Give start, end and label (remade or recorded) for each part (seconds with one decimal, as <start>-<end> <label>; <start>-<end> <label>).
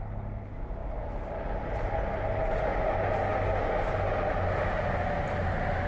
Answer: 0.0-5.9 recorded